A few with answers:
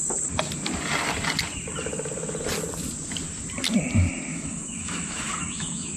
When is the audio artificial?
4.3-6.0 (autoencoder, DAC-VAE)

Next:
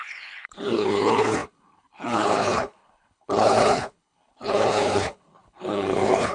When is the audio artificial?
0.0-6.3 (codec, HILCodec)